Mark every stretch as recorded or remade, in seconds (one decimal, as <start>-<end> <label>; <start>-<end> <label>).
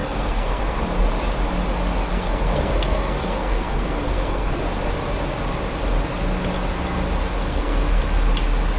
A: 0.0-0.8 remade; 0.8-2.1 recorded; 2.1-4.6 remade; 4.6-7.4 recorded; 7.4-8.0 remade; 8.0-8.8 recorded